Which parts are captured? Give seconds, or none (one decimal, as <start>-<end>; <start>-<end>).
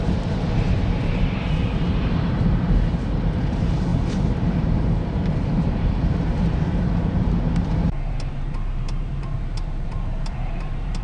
none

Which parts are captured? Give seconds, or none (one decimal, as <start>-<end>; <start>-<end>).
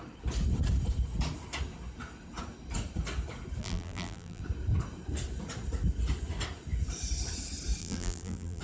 0.0-3.6; 4.4-7.8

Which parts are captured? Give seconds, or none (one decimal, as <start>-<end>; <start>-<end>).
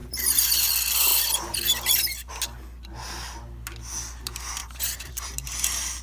0.6-4.6; 5.1-6.0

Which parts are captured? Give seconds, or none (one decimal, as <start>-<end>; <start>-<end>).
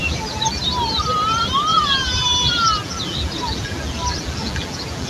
0.6-1.7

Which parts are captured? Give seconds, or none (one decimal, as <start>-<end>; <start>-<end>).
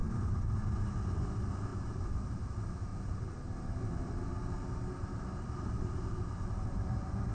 1.2-1.7; 2.4-2.9